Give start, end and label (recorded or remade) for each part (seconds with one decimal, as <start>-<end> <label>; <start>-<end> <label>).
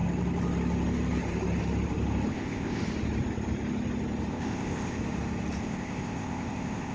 0.0-2.3 recorded; 2.3-2.8 remade; 2.8-4.3 recorded; 4.3-5.0 remade; 5.0-5.6 recorded; 5.6-6.9 remade